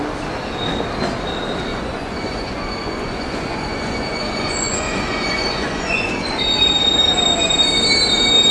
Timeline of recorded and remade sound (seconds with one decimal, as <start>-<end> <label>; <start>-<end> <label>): 0.0-1.7 recorded; 1.7-6.4 remade; 6.4-8.5 recorded